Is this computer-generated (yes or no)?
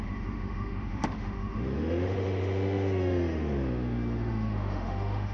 yes